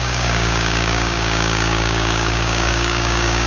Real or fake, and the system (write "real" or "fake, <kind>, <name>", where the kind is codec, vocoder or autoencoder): fake, codec, DAC